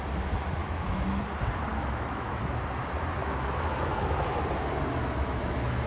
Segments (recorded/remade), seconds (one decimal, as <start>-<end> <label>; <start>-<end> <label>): 0.0-0.6 recorded; 0.6-1.2 remade; 1.2-1.7 recorded; 1.7-2.4 remade; 2.4-3.2 recorded; 3.2-4.4 remade; 4.4-5.0 recorded; 5.0-5.9 remade